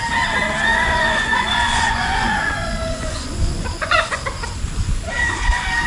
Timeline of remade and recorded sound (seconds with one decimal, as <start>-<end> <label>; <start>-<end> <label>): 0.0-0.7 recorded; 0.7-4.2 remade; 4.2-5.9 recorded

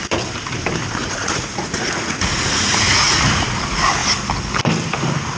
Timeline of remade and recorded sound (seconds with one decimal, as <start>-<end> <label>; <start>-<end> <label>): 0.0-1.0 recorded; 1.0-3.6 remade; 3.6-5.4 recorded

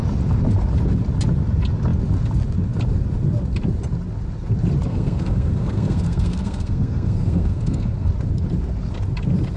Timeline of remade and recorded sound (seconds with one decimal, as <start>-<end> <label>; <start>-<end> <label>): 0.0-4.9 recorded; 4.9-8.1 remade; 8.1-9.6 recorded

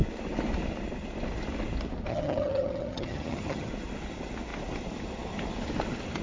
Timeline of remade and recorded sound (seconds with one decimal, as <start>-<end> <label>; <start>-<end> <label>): 0.0-2.1 recorded; 2.1-3.7 remade; 3.7-6.2 recorded